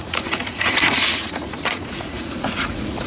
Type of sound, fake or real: fake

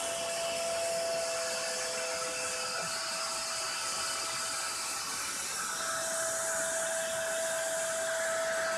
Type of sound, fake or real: real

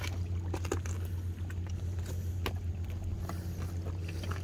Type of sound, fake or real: real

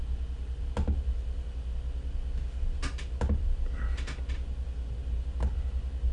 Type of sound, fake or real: real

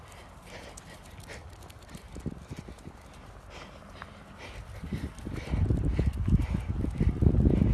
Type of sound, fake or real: real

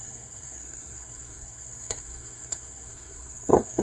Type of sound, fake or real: fake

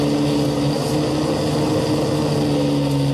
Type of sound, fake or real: real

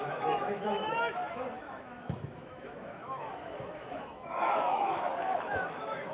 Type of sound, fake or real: fake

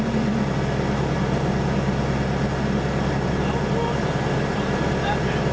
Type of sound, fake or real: real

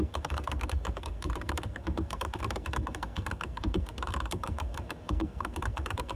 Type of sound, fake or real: fake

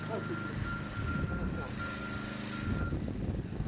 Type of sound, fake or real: real